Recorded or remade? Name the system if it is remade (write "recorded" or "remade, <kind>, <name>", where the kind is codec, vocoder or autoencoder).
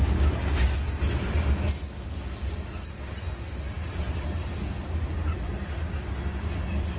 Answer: recorded